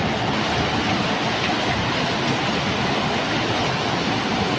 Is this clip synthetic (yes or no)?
no